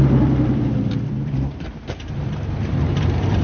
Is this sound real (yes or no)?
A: no